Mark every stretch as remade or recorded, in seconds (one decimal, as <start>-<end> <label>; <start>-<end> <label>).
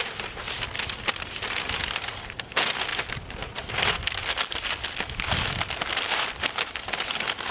0.0-7.5 recorded